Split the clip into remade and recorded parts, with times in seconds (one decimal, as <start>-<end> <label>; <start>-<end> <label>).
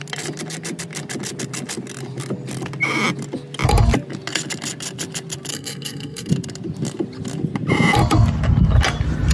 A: 0.0-5.5 recorded; 5.5-6.3 remade; 6.3-9.3 recorded